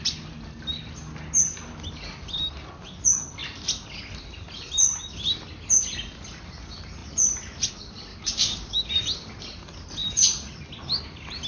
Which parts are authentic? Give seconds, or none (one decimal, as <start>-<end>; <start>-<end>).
0.0-8.1; 8.9-11.5